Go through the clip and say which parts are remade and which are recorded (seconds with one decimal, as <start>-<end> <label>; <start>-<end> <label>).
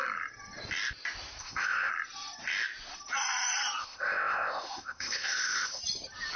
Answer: 0.0-1.4 recorded; 1.4-1.9 remade; 1.9-3.8 recorded; 3.8-5.8 remade; 5.8-6.4 recorded